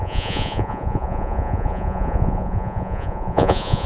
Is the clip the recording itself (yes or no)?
no